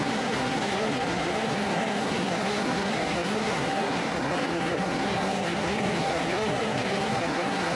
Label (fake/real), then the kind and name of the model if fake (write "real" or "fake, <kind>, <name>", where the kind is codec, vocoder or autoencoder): fake, codec, SNAC